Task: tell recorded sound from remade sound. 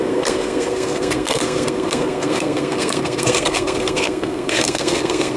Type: remade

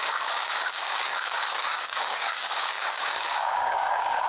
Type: remade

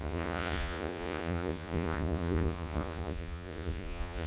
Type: remade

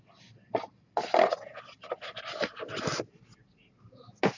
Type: recorded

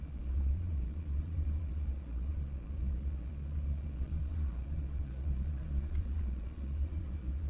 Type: remade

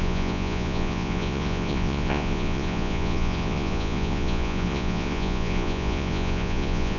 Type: remade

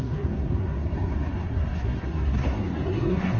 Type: remade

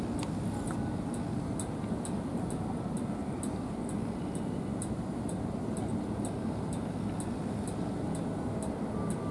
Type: recorded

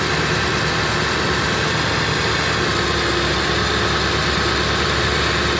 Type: recorded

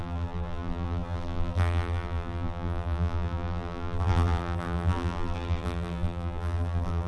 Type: remade